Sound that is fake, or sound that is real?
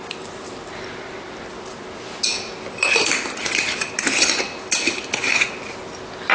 real